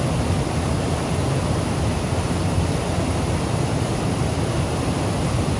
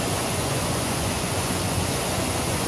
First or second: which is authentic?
first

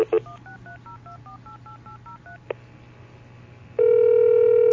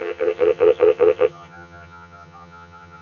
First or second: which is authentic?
first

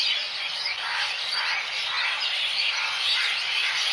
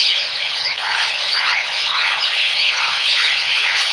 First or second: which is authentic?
first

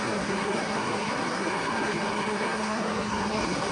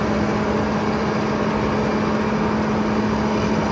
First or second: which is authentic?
second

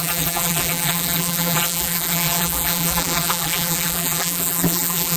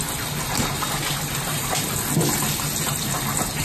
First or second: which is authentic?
second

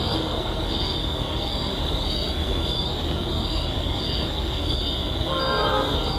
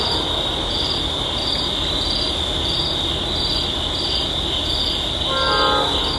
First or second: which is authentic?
second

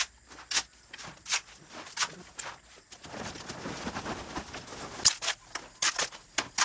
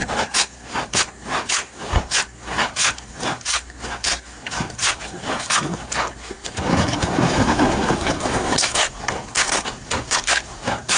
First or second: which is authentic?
first